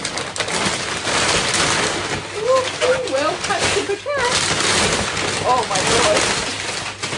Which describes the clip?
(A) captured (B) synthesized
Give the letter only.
A